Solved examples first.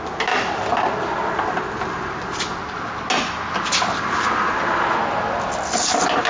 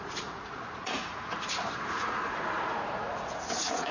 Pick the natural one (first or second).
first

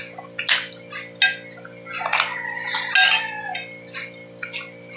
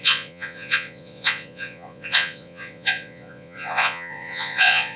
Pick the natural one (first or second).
first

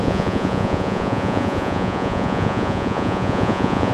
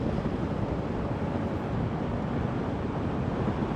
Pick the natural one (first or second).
second